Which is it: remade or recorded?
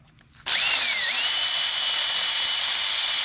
remade